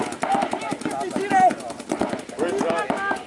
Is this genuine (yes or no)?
yes